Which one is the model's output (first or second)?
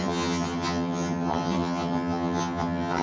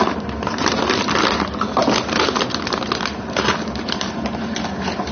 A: first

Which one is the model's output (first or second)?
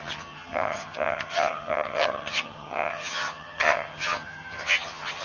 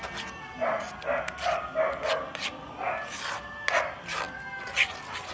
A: first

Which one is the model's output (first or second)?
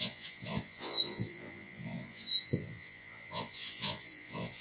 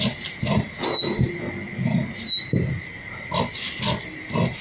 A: first